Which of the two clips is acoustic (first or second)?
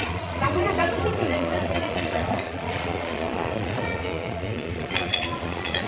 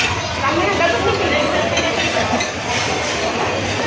second